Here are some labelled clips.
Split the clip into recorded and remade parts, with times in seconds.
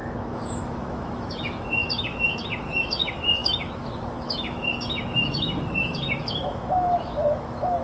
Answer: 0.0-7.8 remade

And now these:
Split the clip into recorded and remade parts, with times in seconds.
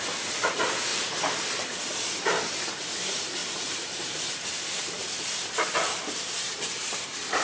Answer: 0.0-7.4 remade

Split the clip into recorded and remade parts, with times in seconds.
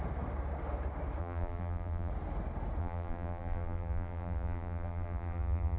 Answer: 0.0-1.2 recorded; 1.2-2.1 remade; 2.1-2.8 recorded; 2.8-5.8 remade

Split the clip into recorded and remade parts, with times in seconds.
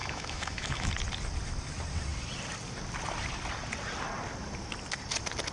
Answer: 0.0-0.9 remade; 0.9-5.5 recorded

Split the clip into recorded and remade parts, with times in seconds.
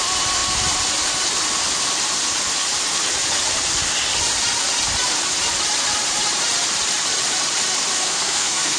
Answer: 0.0-7.9 recorded; 7.9-8.8 remade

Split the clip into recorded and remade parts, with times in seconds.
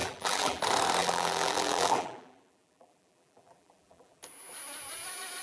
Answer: 0.0-0.6 remade; 0.6-1.0 recorded; 1.0-4.2 remade; 4.2-5.4 recorded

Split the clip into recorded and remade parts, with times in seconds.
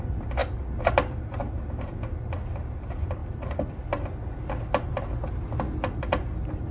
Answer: 0.0-6.7 recorded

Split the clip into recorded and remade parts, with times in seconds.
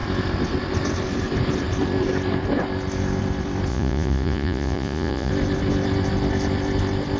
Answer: 0.0-3.7 recorded; 3.7-5.3 remade; 5.3-7.2 recorded